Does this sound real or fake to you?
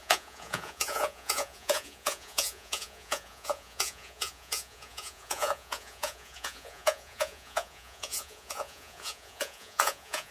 fake